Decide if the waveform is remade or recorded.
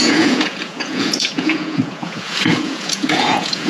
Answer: remade